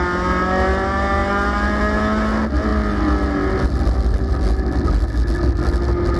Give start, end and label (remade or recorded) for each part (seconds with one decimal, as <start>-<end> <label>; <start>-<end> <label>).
0.0-6.2 recorded